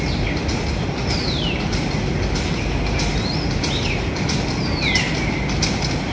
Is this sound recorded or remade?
recorded